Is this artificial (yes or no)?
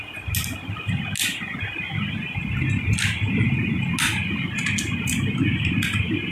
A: no